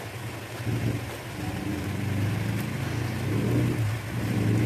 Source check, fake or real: real